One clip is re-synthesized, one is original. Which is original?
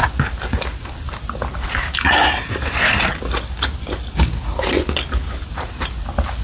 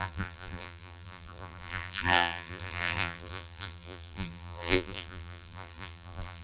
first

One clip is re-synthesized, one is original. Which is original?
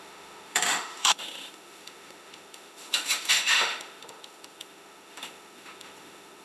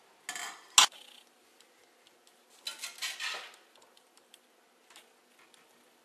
second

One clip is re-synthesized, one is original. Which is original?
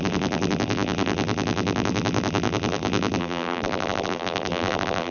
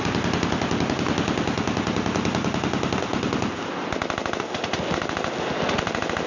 second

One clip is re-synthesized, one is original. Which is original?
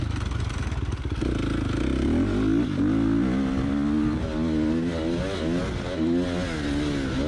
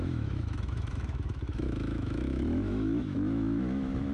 first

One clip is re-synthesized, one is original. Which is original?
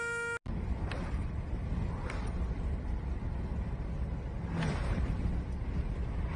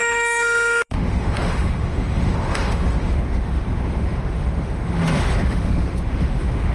first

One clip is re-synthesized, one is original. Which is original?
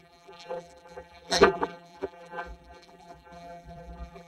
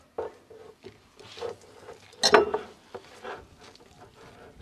second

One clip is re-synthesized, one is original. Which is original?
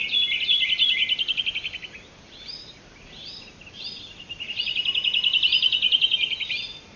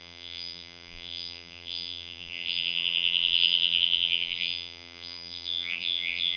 first